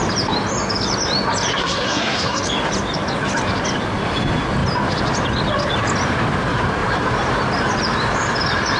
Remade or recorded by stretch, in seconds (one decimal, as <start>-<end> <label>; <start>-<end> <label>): 0.0-1.6 recorded; 1.6-2.4 remade; 2.4-8.8 recorded